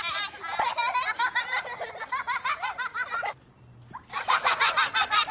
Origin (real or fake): real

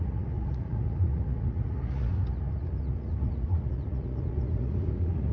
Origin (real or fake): fake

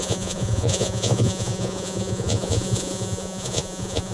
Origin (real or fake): fake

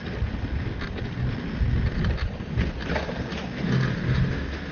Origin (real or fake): real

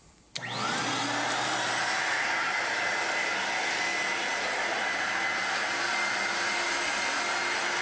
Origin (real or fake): real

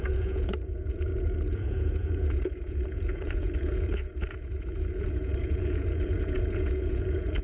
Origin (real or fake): fake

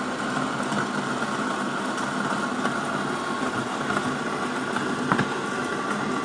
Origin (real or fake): real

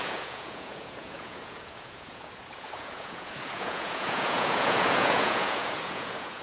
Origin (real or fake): fake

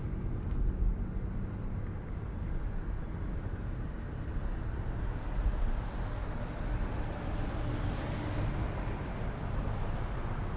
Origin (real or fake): real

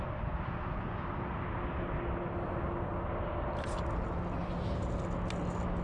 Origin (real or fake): real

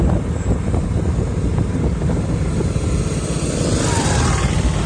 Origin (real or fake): real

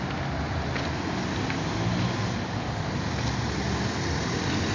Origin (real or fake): real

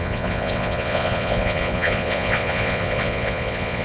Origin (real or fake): fake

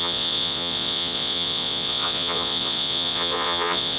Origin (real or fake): fake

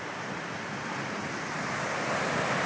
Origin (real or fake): real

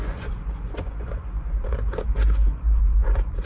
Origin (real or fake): fake